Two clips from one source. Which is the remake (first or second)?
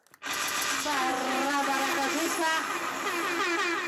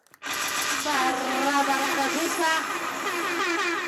second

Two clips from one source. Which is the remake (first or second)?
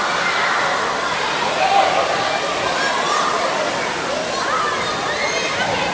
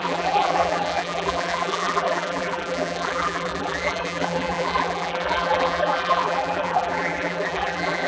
second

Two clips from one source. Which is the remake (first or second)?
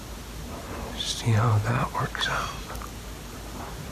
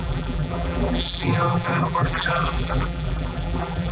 second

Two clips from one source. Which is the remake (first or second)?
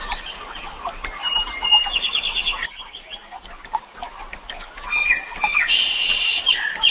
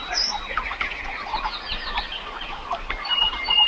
second